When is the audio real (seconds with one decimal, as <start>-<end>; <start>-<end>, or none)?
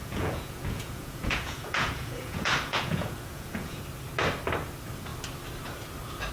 3.8-6.3